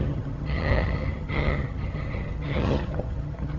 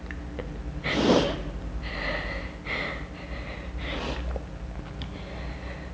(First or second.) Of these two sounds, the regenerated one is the first